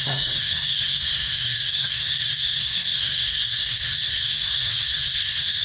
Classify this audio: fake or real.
fake